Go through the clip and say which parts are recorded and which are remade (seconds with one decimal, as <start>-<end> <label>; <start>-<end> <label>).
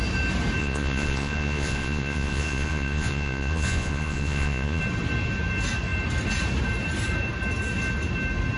0.0-0.6 recorded; 0.6-4.8 remade; 4.8-8.6 recorded